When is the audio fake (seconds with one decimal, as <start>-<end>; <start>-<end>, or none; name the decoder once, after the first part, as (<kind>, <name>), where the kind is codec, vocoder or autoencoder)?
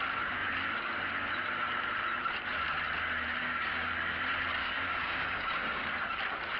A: 3.4-3.9 (codec, DAC); 4.6-5.8